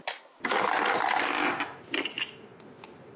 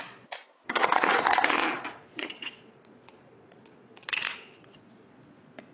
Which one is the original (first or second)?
first